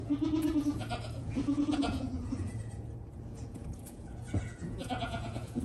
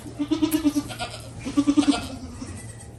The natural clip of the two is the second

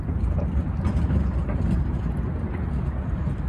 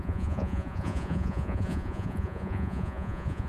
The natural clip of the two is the first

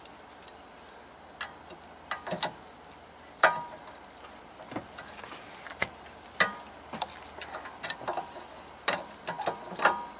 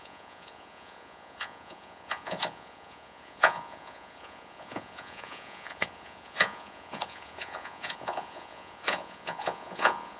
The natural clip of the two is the first